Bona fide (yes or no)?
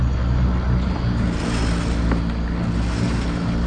yes